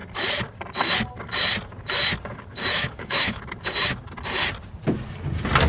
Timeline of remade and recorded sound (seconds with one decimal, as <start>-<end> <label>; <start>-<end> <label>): 0.0-2.7 recorded; 2.7-3.4 remade; 3.4-5.7 recorded